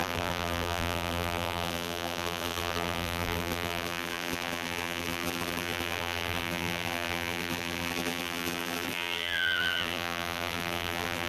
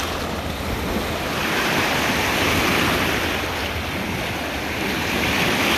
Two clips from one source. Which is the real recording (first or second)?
second